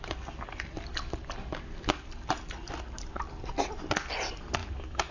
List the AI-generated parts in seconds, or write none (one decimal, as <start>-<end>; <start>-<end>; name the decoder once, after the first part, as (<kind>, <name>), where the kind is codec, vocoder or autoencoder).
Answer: 4.6-5.1 (autoencoder, DAC-VAE)